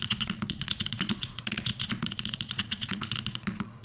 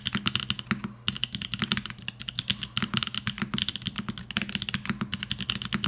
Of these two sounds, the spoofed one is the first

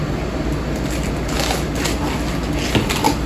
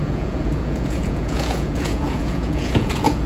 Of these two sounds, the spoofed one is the second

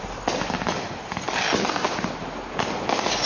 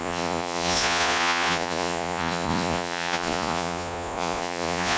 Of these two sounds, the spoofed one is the second